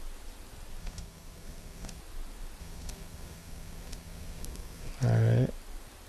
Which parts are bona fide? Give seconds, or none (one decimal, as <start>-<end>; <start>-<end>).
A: 0.0-0.8; 2.0-2.6; 4.9-6.1